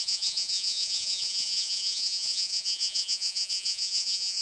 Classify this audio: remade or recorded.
remade